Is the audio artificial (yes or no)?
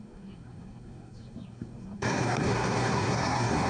yes